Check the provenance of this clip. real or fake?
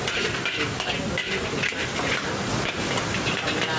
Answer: real